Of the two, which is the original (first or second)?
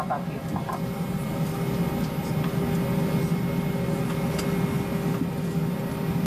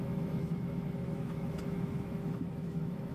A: first